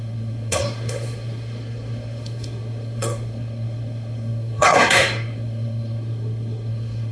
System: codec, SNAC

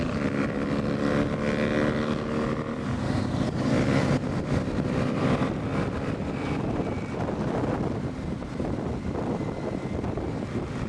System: none